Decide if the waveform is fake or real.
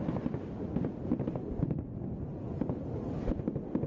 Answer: real